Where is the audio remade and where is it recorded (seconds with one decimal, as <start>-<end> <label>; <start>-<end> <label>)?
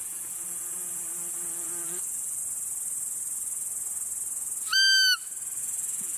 0.0-2.4 remade; 2.4-5.6 recorded; 5.6-6.2 remade